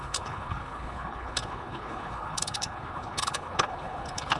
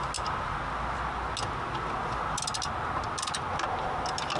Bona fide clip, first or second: second